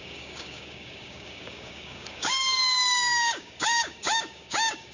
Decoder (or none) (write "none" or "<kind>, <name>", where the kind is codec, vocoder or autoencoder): codec, DAC